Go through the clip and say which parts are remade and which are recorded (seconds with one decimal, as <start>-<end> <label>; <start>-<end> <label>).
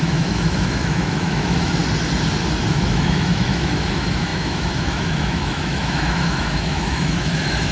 0.0-1.8 remade; 1.8-2.7 recorded; 2.7-7.7 remade